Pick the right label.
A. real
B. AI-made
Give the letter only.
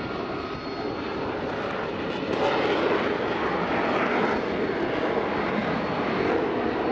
A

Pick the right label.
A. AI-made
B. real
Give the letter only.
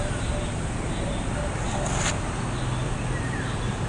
B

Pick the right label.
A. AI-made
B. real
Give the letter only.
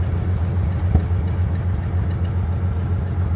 B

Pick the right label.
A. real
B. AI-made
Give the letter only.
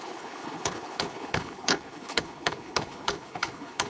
B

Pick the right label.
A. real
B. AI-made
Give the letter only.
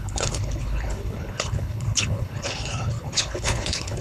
B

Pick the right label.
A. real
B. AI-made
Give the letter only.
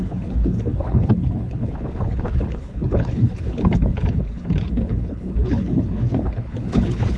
B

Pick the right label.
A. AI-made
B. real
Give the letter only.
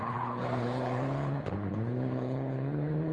A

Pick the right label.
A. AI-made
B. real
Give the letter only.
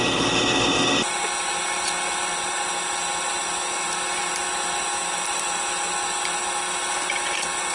B